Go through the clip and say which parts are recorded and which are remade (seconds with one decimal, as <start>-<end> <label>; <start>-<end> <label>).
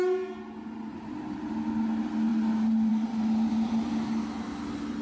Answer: 0.0-5.0 recorded